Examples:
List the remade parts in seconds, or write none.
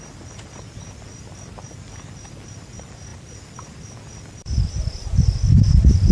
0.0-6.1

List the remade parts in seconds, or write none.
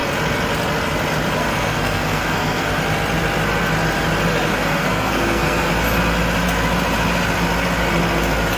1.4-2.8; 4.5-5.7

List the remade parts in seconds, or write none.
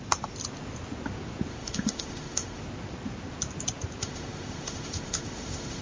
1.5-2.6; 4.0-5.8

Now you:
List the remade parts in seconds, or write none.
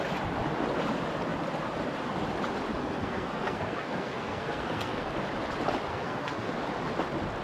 2.8-5.1; 5.9-6.5